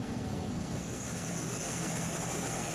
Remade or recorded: remade